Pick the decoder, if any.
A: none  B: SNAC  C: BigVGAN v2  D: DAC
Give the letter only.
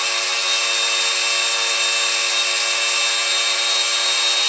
A